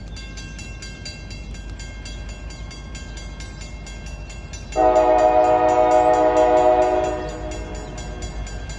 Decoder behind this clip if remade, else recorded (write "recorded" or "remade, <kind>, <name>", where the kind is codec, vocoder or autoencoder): recorded